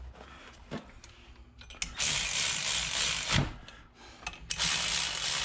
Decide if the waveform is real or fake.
real